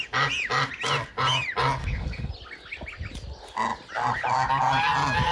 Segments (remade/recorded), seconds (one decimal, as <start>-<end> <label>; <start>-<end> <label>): 0.0-1.8 recorded; 1.8-2.3 remade; 2.3-5.3 recorded